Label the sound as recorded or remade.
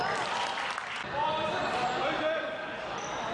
recorded